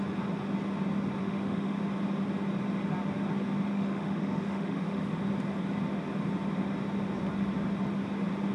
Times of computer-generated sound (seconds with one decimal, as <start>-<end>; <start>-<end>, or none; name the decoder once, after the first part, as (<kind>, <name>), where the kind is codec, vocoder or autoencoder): 1.2-1.8 (autoencoder, DAC-VAE); 3.7-5.2